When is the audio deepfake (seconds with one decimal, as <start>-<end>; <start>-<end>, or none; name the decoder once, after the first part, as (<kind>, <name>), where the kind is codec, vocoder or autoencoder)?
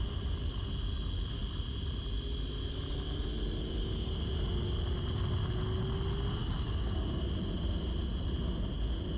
6.4-7.2 (codec, DAC)